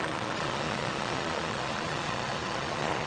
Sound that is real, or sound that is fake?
fake